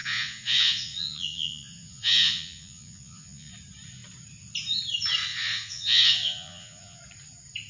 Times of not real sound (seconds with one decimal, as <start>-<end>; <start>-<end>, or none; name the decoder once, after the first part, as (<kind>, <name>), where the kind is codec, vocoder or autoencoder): 0.0-3.5 (vocoder, Vocos); 5.3-7.0